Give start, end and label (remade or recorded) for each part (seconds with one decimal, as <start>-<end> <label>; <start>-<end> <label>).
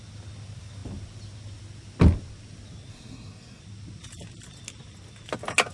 0.0-2.9 recorded; 2.9-3.6 remade; 3.6-5.7 recorded